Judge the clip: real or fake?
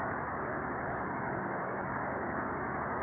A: fake